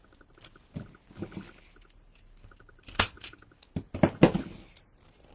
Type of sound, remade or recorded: recorded